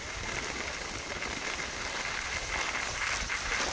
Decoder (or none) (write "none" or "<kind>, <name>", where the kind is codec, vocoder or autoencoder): none